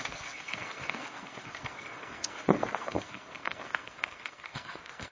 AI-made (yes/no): yes